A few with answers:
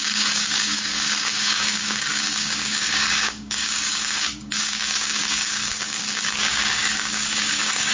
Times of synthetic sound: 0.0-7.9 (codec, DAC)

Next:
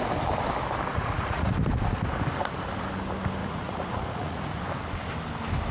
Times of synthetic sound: 0.9-1.5 (vocoder, Vocos); 3.4-4.6

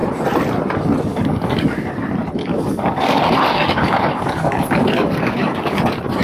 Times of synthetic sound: 1.1-1.9 (codec, DAC); 2.4-5.8

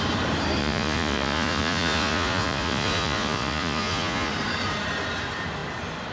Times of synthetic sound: 0.6-4.3 (vocoder, Vocos)

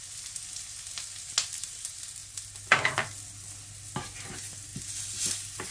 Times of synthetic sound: none

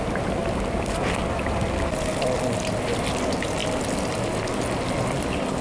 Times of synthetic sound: none